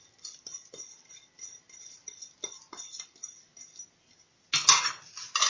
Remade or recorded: recorded